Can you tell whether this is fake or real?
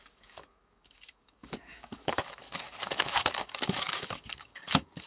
fake